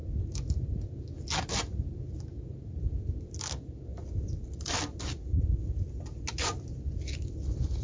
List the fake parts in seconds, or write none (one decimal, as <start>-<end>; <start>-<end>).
none